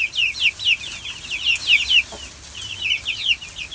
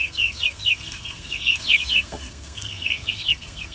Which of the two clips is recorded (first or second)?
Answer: first